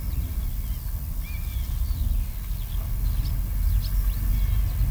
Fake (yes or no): no